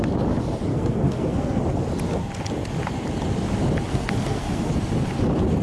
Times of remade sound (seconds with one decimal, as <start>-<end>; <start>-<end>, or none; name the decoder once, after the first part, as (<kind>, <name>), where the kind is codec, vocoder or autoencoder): 0.7-1.6 (codec, SNAC); 3.9-4.7